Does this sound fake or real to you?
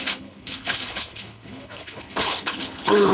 fake